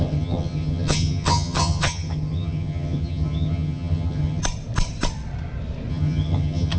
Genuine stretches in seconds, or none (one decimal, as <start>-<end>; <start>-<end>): 4.4-5.9